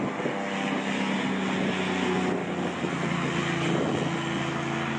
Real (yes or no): yes